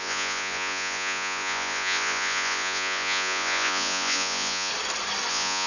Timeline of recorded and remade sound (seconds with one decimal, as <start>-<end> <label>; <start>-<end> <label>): 0.0-4.7 remade; 4.7-5.3 recorded; 5.3-5.7 remade